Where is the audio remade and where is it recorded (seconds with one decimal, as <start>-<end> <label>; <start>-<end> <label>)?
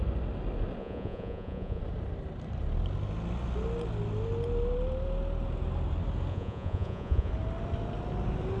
0.0-0.8 recorded; 0.8-1.8 remade; 1.8-6.3 recorded; 6.3-7.3 remade; 7.3-8.6 recorded